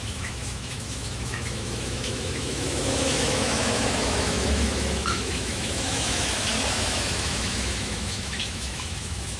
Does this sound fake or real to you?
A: fake